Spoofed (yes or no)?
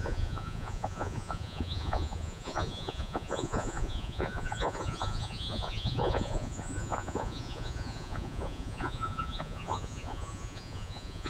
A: yes